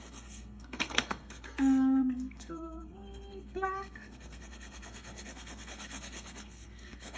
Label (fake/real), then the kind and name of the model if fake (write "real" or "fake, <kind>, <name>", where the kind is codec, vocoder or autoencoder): fake, codec, SNAC